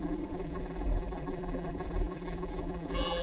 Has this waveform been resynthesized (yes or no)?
yes